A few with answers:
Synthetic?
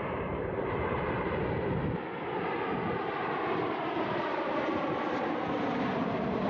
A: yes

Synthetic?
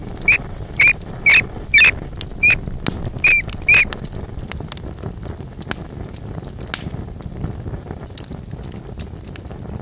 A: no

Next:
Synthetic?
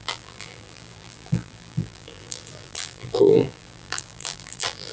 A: yes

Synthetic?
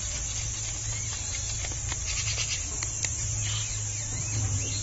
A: no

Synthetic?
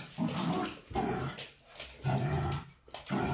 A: no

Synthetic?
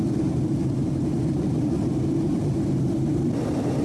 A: yes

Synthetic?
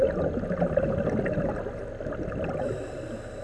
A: no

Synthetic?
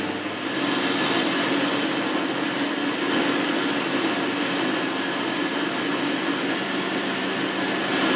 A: no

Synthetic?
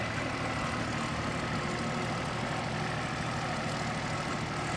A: no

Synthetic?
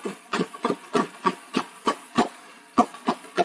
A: yes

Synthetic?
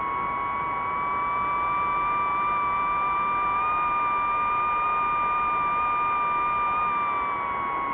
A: no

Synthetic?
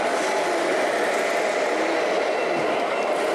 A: no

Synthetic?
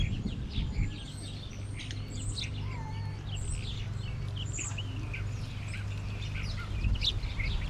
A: no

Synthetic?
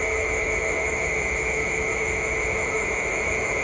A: yes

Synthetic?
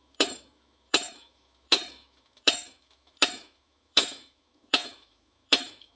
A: yes